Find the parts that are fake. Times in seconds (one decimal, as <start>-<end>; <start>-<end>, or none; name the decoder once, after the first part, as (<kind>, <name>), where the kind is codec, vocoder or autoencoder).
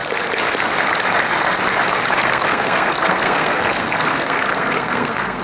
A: 2.2-5.4 (codec, SNAC)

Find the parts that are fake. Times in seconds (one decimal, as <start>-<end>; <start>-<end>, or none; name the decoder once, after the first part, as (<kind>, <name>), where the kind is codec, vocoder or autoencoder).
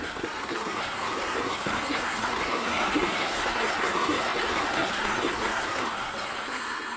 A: 0.0-7.0 (codec, SNAC)